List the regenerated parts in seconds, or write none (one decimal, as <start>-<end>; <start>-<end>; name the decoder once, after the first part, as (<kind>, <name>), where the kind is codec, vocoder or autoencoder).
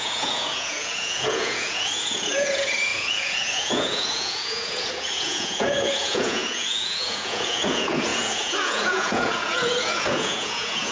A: 0.0-10.9 (vocoder, Vocos)